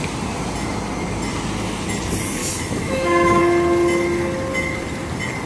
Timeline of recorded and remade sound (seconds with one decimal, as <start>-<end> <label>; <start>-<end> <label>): 0.0-2.4 recorded; 2.4-3.4 remade; 3.4-5.5 recorded